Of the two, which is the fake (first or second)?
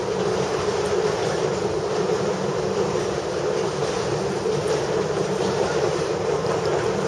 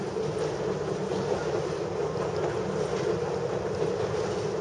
first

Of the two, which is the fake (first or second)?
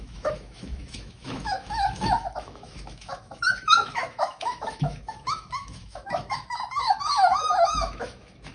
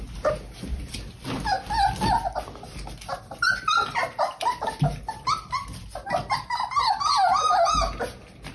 first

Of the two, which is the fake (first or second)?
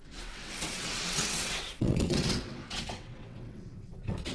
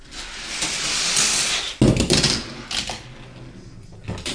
first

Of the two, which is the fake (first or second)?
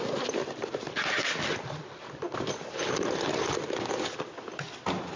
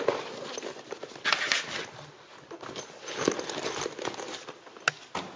first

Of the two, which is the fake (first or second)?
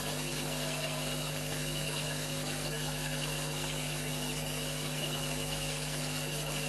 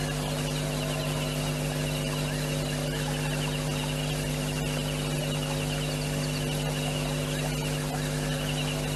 first